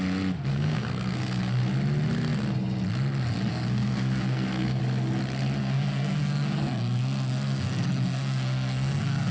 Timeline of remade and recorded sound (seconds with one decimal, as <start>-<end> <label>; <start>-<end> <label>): 0.0-0.5 recorded; 0.5-1.4 remade; 1.4-3.5 recorded; 3.5-4.8 remade; 4.8-5.6 recorded; 5.6-9.3 remade

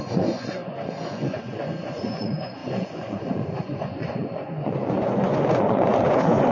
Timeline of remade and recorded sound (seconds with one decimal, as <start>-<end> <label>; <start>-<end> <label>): 0.0-6.5 remade

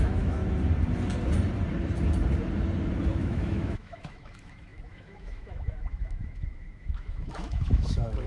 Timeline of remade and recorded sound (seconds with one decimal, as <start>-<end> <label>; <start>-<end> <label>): 0.0-0.4 remade; 0.4-3.1 recorded; 3.1-8.3 remade

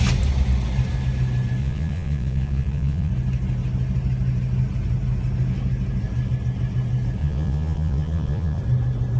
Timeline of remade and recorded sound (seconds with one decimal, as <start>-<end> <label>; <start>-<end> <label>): 0.0-1.6 recorded; 1.6-3.1 remade; 3.1-7.2 recorded; 7.2-8.6 remade; 8.6-9.2 recorded

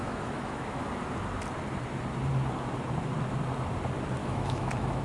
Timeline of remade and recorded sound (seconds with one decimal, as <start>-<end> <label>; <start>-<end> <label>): 0.0-0.9 remade; 0.9-4.2 recorded; 4.2-5.0 remade

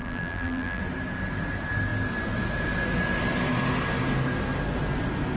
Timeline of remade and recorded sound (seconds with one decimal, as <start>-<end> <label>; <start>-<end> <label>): 0.0-0.8 remade; 0.8-5.4 recorded